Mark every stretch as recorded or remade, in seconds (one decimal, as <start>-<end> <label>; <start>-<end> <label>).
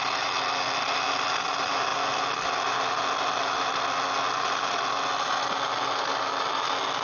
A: 0.0-7.0 recorded